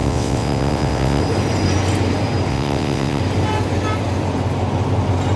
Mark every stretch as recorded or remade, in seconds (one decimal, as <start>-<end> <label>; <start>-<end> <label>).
0.0-1.2 remade; 1.2-2.5 recorded; 2.5-3.2 remade; 3.2-5.4 recorded